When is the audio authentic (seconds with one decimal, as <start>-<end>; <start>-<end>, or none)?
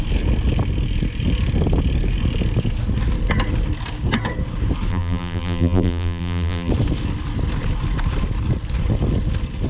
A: 0.0-4.9; 6.7-9.7